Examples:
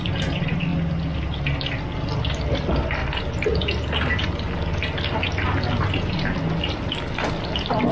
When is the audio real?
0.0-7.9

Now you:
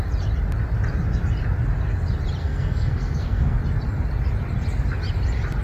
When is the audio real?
0.0-2.4; 3.6-5.6

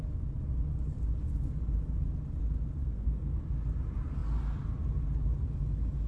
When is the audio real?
0.0-2.8; 3.4-6.1

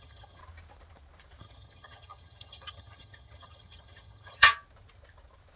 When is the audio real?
0.4-1.4; 4.5-5.6

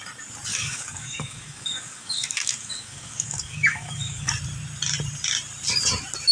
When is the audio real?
0.0-0.5; 4.3-6.3